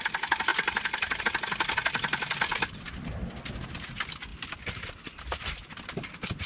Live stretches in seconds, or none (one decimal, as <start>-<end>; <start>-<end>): 0.0-0.5; 1.2-2.5; 3.1-4.3; 6.1-6.5